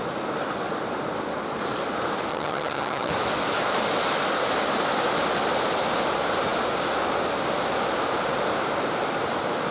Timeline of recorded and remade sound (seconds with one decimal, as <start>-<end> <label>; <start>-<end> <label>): 0.0-2.3 recorded; 2.3-3.1 remade; 3.1-9.7 recorded